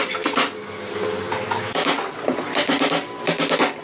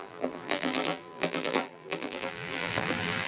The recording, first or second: first